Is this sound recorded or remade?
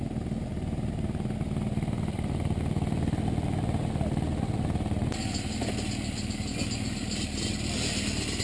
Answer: recorded